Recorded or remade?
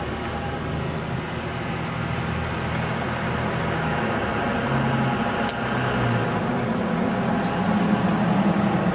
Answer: recorded